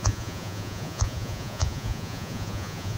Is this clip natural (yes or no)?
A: no